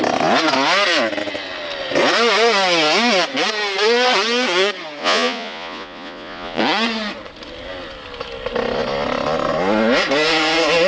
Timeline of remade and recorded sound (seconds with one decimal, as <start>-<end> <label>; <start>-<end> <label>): 0.0-5.0 recorded; 5.0-6.6 remade; 6.6-10.9 recorded